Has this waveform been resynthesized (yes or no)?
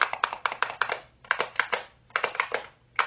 no